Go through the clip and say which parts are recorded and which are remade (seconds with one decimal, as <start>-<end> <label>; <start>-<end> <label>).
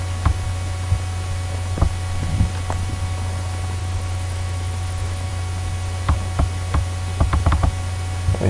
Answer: 0.0-3.8 recorded; 3.8-5.3 remade; 5.3-8.5 recorded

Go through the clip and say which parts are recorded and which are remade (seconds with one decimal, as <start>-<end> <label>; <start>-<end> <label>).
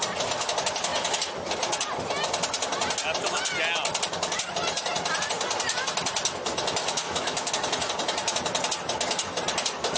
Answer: 0.0-6.8 recorded; 6.8-7.5 remade; 7.5-10.0 recorded